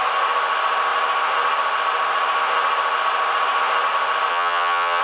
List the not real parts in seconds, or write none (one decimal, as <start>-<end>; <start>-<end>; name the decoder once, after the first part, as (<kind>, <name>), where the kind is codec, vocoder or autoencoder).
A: 4.3-5.0 (vocoder, HiFi-GAN)